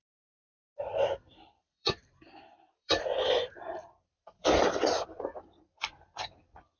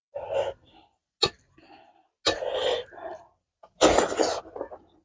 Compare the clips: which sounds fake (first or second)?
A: first